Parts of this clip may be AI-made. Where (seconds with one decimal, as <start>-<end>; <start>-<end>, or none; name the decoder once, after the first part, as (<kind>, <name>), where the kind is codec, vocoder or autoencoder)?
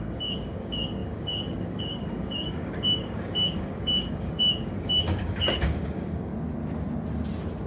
0.0-6.3 (codec, DAC)